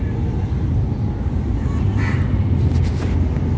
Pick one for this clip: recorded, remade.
recorded